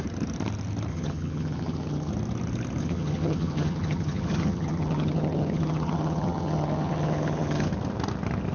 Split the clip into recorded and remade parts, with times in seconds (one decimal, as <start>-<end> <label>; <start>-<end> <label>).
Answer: 0.0-0.9 recorded; 0.9-2.1 remade; 2.1-2.8 recorded; 2.8-7.7 remade; 7.7-8.5 recorded